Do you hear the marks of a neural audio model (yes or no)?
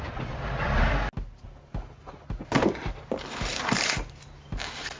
no